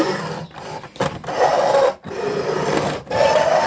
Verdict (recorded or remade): recorded